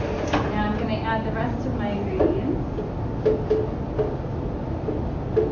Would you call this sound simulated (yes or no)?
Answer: no